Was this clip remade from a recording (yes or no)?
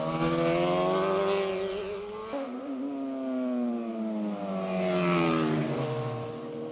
no